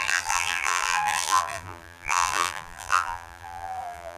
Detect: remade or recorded remade